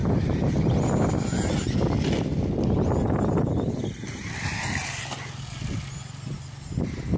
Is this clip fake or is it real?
real